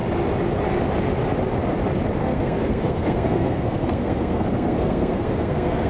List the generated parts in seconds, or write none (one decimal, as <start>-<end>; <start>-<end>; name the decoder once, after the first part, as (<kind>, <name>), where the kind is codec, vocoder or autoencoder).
2.2-5.9 (codec, SNAC)